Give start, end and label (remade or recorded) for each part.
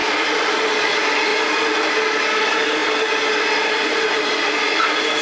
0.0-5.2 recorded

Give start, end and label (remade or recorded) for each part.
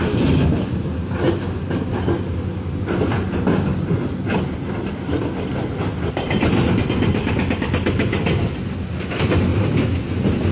0.0-10.5 recorded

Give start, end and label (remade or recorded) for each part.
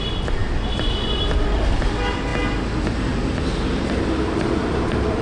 0.0-0.4 recorded; 0.4-1.9 remade; 1.9-5.2 recorded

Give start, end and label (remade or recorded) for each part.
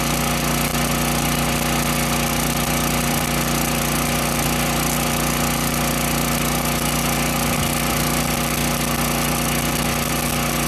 0.0-10.7 recorded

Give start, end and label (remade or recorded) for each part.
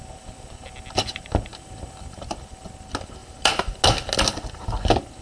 0.0-1.5 recorded; 1.5-2.2 remade; 2.2-5.2 recorded